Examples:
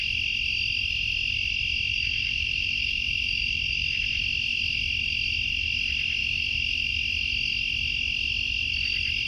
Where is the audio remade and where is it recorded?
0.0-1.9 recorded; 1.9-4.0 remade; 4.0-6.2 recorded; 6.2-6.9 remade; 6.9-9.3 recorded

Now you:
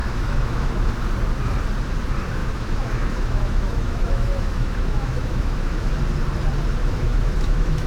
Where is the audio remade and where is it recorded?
0.0-0.7 remade; 0.7-2.4 recorded; 2.4-5.9 remade; 5.9-6.8 recorded; 6.8-7.9 remade

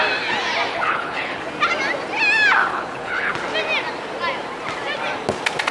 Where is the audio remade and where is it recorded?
0.0-0.7 recorded; 0.7-1.4 remade; 1.4-2.7 recorded; 2.7-3.3 remade; 3.3-5.7 recorded

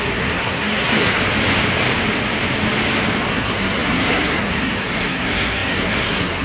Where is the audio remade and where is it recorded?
0.0-1.2 remade; 1.2-3.3 recorded; 3.3-6.4 remade

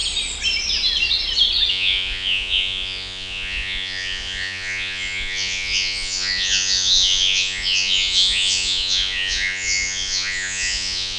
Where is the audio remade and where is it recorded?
0.0-1.7 recorded; 1.7-11.2 remade

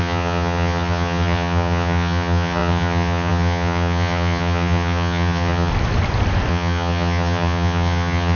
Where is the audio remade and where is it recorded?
0.0-5.7 remade; 5.7-6.5 recorded; 6.5-8.3 remade